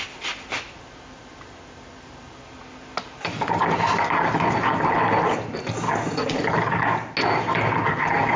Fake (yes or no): no